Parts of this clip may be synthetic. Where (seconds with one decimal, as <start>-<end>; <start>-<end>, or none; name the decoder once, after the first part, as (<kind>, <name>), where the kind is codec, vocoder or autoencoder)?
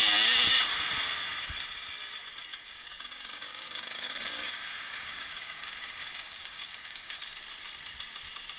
2.5-7.2 (codec, DAC)